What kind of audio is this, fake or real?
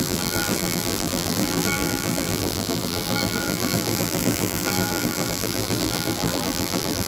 fake